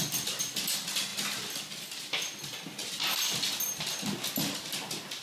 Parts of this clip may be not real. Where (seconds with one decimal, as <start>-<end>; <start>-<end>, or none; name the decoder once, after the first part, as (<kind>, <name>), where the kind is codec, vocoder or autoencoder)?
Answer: none